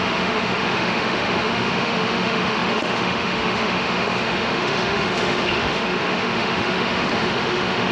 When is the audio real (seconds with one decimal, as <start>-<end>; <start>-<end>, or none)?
none